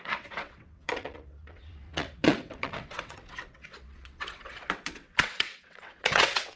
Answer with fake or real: fake